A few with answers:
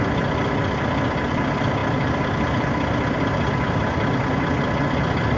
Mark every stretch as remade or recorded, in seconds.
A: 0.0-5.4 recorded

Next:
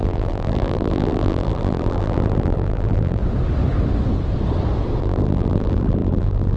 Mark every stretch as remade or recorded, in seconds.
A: 0.0-3.2 remade; 3.2-5.0 recorded; 5.0-6.6 remade

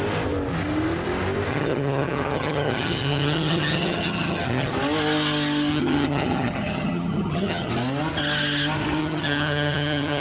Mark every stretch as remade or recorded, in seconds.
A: 0.0-1.5 recorded; 1.5-4.7 remade; 4.7-5.7 recorded; 5.7-7.7 remade; 7.7-9.0 recorded; 9.0-10.2 remade